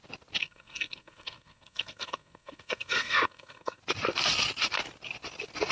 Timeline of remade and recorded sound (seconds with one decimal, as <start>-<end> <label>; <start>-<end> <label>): 0.0-0.4 recorded; 0.4-3.8 remade; 3.8-5.7 recorded